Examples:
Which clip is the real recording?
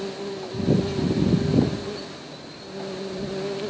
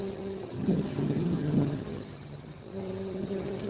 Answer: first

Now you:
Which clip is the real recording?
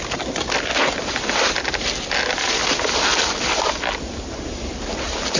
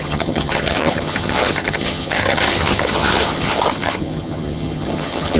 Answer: first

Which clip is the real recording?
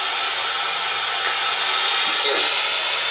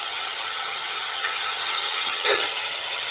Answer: first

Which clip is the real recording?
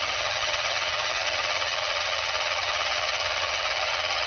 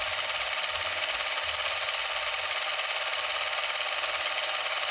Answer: second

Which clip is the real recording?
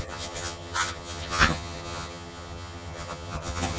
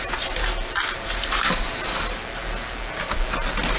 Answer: second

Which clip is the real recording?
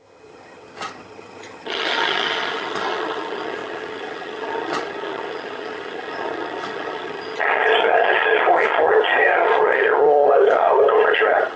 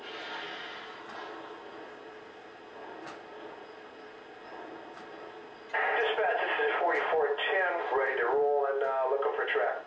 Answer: second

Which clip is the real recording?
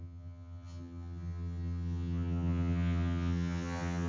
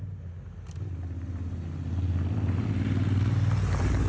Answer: second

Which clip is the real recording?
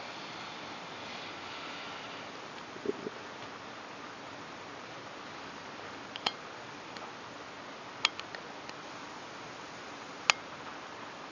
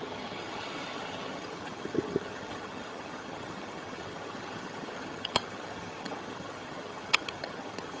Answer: first